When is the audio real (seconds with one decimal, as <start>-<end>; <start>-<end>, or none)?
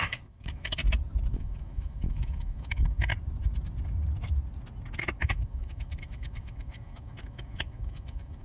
0.8-1.3; 3.1-5.2